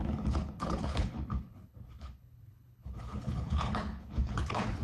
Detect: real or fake fake